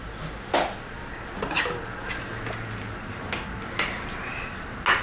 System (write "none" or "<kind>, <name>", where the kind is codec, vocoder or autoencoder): none